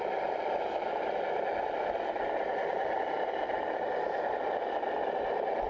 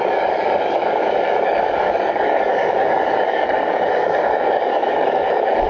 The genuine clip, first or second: first